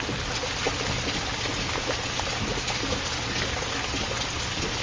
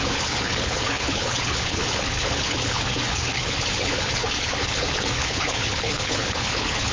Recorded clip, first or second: first